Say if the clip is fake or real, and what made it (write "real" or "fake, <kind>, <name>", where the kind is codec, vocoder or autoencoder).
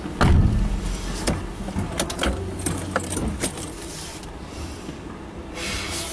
real